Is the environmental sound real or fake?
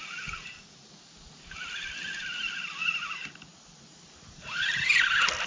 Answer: real